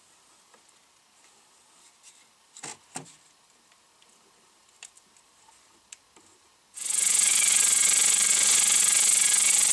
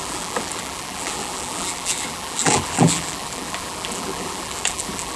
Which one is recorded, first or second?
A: first